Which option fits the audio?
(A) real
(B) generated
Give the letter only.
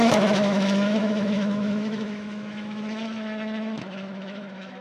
B